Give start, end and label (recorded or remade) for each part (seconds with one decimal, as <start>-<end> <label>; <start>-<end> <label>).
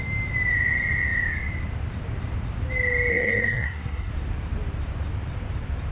0.0-3.1 recorded; 3.1-4.1 remade; 4.1-5.9 recorded